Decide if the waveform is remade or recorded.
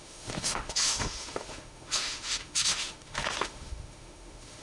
remade